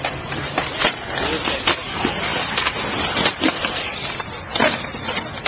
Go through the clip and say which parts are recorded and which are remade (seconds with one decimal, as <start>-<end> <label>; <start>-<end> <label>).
0.0-5.5 recorded